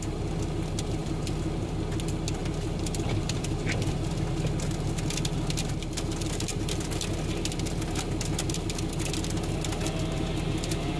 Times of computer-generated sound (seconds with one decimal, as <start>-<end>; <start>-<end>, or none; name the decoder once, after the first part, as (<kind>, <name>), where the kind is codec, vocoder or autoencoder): 1.0-1.7 (vocoder, BigVGAN v2); 2.4-4.1; 6.5-7.1

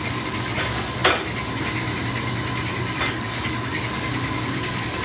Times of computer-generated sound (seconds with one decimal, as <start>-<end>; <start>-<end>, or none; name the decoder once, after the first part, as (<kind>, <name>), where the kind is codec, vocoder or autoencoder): 0.0-1.0 (codec, DAC); 3.1-5.0

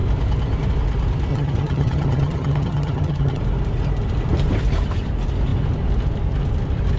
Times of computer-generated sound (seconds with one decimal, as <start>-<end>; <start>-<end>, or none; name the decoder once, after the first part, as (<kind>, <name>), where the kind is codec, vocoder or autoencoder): 1.3-3.4 (vocoder, HiFi-GAN)

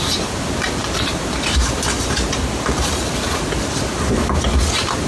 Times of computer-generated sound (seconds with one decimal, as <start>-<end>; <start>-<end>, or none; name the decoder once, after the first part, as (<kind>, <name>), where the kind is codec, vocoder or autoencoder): none

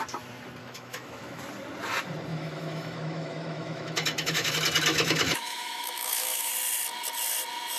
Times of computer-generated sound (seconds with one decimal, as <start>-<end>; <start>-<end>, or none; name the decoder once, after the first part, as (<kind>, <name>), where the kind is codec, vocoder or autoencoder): 0.6-1.4 (autoencoder, DAC-VAE); 2.3-4.5; 4.9-6.5